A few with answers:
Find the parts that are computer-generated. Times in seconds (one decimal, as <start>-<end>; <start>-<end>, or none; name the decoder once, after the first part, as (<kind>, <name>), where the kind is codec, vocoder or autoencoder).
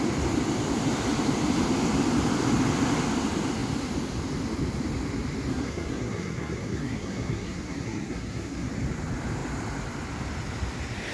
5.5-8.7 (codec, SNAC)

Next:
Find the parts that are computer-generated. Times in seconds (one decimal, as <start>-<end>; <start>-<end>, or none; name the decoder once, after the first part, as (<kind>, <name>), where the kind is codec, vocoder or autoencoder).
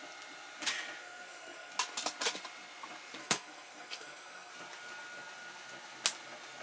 1.0-1.7 (codec, SNAC); 3.2-4.5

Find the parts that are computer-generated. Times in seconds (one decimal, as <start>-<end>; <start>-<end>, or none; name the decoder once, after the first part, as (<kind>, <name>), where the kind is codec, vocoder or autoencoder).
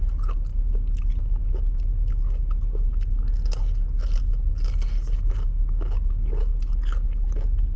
none